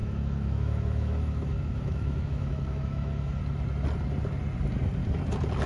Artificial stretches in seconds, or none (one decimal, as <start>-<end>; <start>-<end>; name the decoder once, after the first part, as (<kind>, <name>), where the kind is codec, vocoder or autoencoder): 0.0-3.4 (autoencoder, DAC-VAE)